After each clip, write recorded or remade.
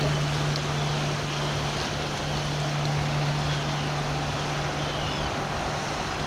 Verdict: recorded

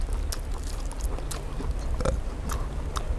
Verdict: recorded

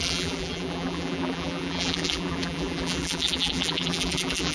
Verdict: remade